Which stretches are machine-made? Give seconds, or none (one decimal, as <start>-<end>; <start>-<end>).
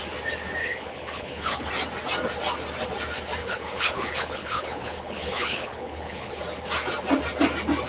0.6-1.7; 3.4-6.4